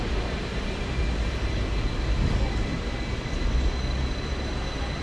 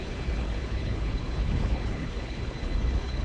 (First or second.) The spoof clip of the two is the second